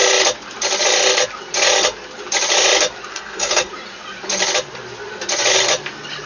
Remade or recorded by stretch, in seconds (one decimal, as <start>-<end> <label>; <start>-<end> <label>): 0.0-3.1 recorded; 3.1-3.7 remade; 3.7-6.3 recorded